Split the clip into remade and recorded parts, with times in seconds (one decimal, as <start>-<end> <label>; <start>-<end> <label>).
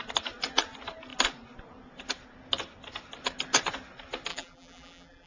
0.0-4.3 recorded; 4.3-5.3 remade